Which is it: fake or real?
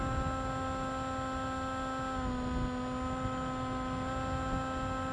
real